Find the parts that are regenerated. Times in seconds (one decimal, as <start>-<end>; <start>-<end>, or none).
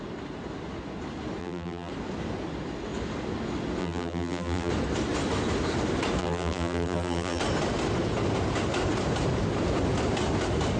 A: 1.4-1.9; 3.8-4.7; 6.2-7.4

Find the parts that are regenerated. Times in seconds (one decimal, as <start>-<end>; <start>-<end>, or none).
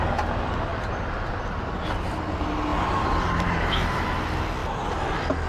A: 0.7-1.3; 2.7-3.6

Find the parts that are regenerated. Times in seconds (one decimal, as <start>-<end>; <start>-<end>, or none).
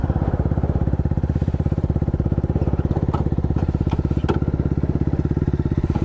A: 0.0-4.2; 5.4-6.0